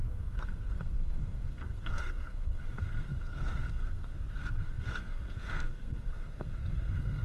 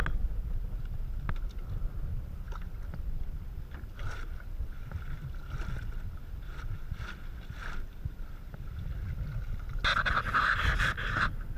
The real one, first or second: second